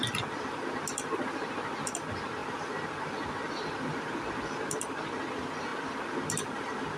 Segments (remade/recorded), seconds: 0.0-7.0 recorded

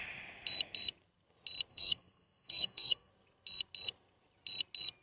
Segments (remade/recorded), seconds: 0.0-1.7 recorded; 1.7-3.1 remade; 3.1-5.0 recorded

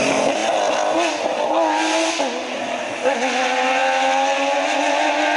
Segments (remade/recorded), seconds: 0.0-5.4 recorded